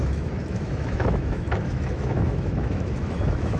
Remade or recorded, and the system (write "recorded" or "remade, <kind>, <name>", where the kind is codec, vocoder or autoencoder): remade, autoencoder, DAC-VAE